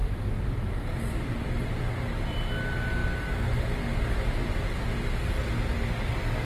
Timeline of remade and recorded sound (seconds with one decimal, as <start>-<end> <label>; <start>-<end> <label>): 0.0-6.4 recorded